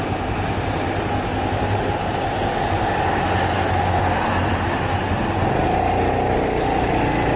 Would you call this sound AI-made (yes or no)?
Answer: no